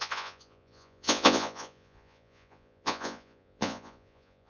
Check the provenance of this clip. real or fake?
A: fake